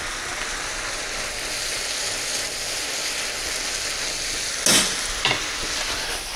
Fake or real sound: real